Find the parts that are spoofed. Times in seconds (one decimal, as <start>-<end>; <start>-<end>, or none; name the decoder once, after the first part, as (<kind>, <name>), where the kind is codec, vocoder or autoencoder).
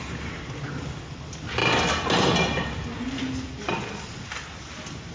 none